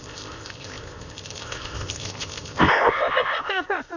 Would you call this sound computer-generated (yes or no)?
yes